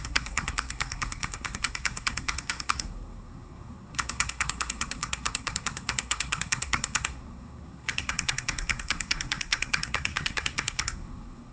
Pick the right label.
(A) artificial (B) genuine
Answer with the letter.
A